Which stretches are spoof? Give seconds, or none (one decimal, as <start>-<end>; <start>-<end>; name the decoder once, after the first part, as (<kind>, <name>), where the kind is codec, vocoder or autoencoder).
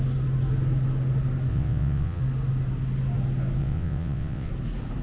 1.5-2.2 (vocoder, WaveNeXt); 3.6-4.5